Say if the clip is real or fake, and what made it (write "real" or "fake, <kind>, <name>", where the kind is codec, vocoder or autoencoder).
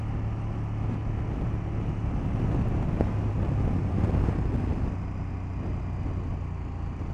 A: real